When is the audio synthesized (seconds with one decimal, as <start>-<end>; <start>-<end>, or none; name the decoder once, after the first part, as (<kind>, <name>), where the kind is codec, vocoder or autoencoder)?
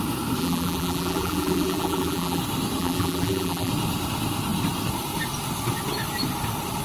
0.4-2.4 (vocoder, BigVGAN v2); 2.8-3.7